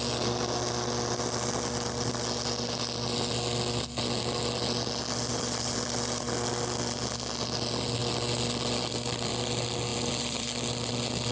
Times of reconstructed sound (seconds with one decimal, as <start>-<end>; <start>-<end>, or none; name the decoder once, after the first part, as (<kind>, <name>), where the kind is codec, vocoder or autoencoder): 5.3-6.3 (vocoder, BigVGAN v2); 8.0-9.3; 9.9-10.9